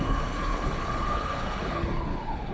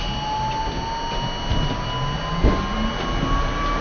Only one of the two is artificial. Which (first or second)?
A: first